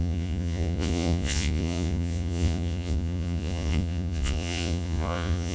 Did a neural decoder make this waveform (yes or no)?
yes